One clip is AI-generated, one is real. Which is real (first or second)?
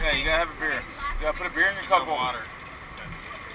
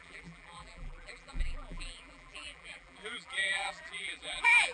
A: first